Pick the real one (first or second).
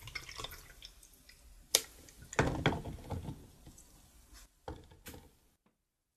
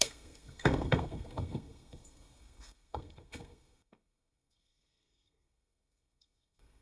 first